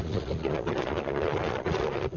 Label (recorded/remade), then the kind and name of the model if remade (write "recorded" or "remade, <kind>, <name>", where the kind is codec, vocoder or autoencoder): remade, vocoder, Vocos